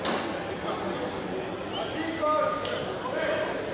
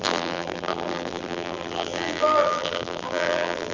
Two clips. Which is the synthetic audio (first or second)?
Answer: second